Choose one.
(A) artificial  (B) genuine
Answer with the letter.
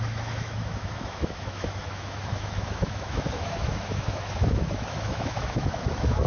A